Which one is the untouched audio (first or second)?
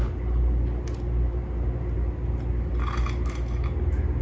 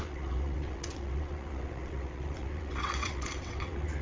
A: first